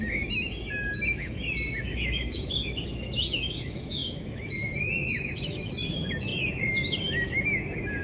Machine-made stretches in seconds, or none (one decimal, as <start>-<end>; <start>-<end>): 0.0-8.0